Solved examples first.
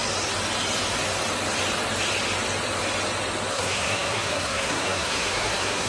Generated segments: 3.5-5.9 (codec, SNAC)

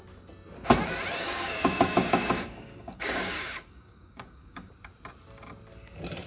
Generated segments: 1.2-4.7 (codec, DAC)

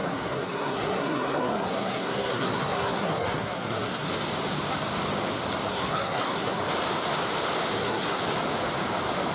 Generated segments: 0.0-4.1 (codec, SNAC); 5.7-6.6; 7.7-8.2

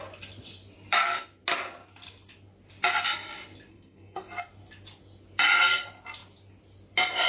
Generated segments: 3.7-4.5 (codec, SNAC)